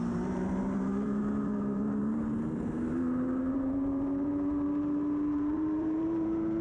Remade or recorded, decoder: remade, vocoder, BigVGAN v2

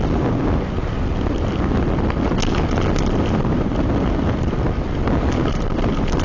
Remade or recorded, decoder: recorded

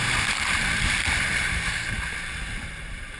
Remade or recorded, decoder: remade, vocoder, BigVGAN v2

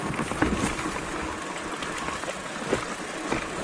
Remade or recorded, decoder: recorded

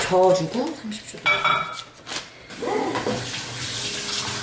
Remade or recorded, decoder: recorded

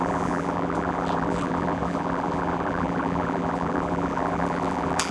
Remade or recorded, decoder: remade, vocoder, BigVGAN v2